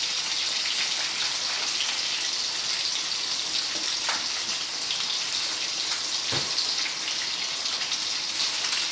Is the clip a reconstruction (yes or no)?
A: no